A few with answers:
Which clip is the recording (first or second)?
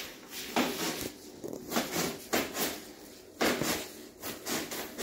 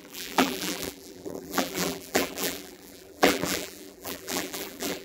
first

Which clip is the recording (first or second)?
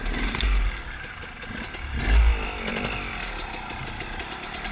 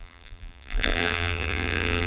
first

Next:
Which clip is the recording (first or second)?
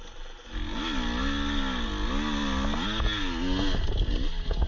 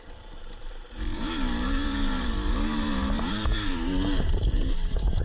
first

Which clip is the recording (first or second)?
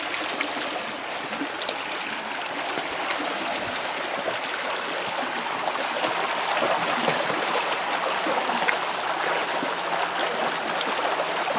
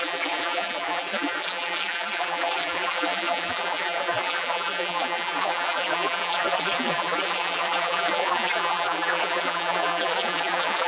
first